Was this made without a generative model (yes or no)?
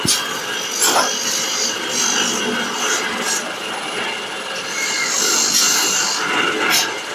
yes